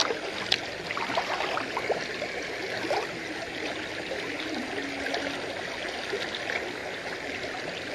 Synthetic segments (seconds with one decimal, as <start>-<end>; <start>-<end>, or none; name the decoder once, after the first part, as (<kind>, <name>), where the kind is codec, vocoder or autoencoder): 0.0-6.8 (vocoder, BigVGAN v2)

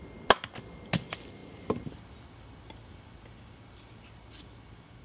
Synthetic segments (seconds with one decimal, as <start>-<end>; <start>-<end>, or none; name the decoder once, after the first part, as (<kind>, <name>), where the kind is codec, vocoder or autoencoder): none

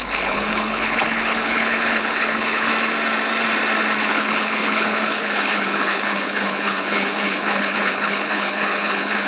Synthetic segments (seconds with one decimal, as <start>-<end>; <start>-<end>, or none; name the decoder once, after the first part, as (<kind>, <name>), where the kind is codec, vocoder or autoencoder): 0.0-2.7 (codec, HILCodec); 4.0-9.3

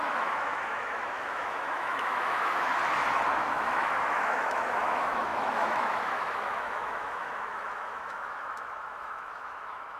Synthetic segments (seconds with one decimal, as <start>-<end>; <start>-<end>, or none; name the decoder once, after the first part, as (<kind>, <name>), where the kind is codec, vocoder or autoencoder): 0.0-2.8 (autoencoder, DAC-VAE); 3.4-10.0

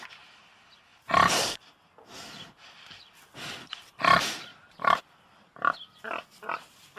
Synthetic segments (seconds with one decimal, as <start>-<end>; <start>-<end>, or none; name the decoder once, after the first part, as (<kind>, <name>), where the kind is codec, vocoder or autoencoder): 0.9-1.7 (vocoder, BigVGAN v2); 4.5-5.0

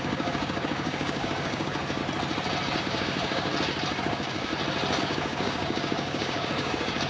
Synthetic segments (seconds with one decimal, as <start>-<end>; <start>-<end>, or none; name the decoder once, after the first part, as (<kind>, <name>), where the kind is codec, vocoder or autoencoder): 0.0-2.0 (codec, DAC); 2.8-3.5; 4.1-4.5; 5.0-7.1

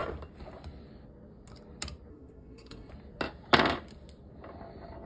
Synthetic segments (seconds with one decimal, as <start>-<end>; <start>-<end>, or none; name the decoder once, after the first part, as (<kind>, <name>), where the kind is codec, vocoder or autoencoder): 2.1-2.9 (codec, SNAC)

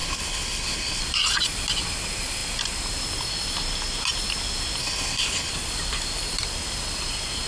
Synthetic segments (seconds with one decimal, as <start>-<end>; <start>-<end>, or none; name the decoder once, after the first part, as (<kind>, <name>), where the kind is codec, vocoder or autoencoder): 0.0-1.0 (codec, HILCodec); 4.8-5.5